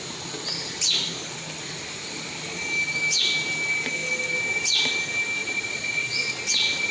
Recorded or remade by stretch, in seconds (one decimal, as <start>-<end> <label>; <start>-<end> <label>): 0.0-5.4 recorded; 5.4-6.3 remade; 6.3-6.9 recorded